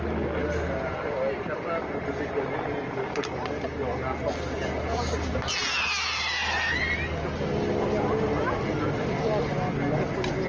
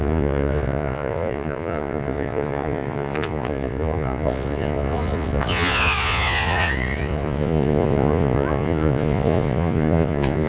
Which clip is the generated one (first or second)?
second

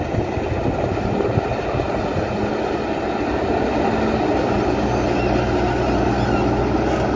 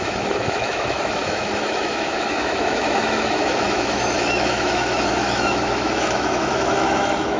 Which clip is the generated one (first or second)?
second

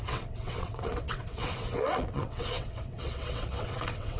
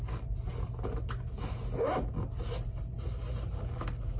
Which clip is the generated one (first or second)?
first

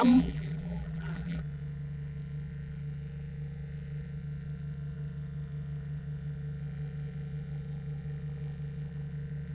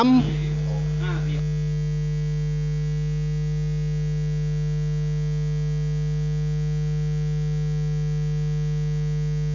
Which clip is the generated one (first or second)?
first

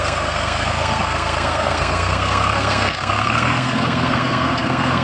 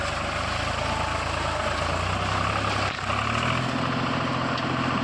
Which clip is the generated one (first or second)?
first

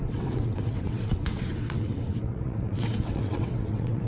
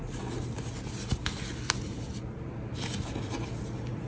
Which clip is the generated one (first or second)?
first